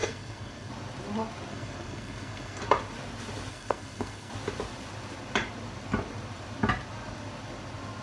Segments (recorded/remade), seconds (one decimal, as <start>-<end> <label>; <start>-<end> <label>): 0.0-0.7 remade; 0.7-1.5 recorded; 1.5-2.6 remade; 2.6-3.5 recorded; 3.5-4.3 remade; 4.3-8.0 recorded

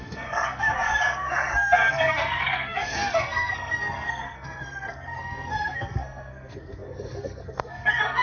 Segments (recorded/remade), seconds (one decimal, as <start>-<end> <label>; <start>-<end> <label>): 0.0-8.2 remade